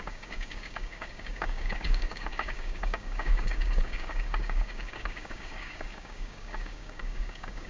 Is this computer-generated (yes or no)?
yes